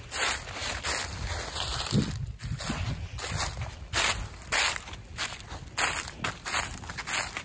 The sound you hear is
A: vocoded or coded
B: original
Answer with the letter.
B